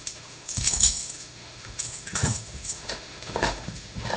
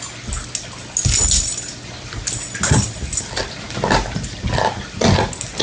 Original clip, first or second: second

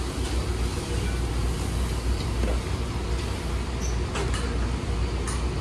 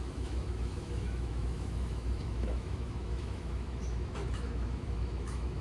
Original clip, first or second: first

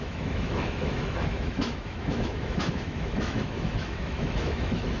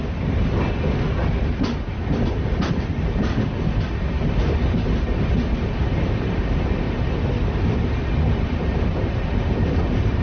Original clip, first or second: second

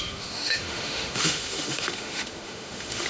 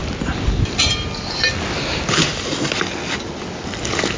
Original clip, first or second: second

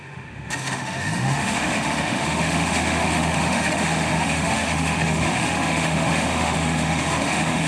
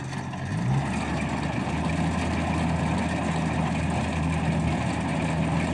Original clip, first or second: second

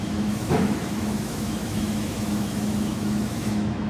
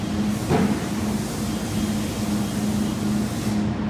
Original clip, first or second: second